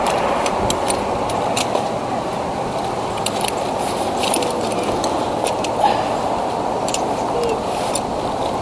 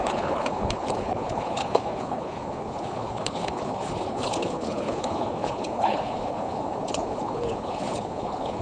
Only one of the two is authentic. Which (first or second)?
first